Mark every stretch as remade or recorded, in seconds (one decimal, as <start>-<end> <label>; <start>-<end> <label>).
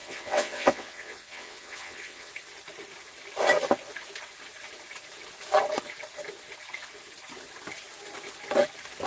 0.0-2.3 remade; 2.3-9.1 recorded